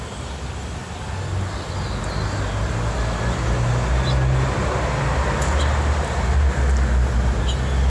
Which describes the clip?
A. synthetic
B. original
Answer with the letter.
B